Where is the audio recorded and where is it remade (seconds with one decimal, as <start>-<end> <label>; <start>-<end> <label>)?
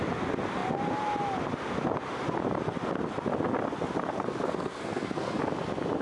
0.0-4.1 recorded; 4.1-5.4 remade; 5.4-6.0 recorded